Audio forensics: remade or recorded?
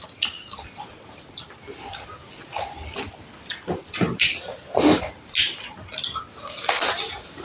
recorded